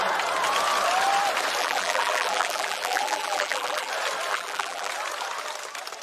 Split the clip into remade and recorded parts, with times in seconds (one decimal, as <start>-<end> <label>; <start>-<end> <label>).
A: 0.0-1.6 recorded; 1.6-3.9 remade; 3.9-4.3 recorded; 4.3-4.9 remade; 4.9-6.0 recorded